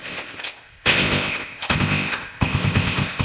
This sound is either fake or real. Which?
fake